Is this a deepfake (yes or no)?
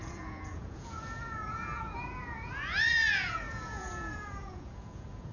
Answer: yes